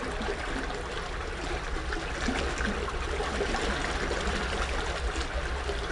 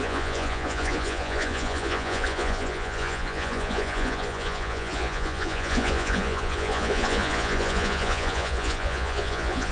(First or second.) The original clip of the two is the first